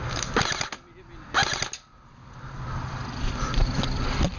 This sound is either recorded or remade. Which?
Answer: recorded